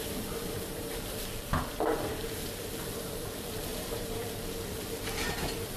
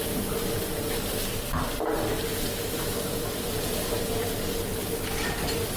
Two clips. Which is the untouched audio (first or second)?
second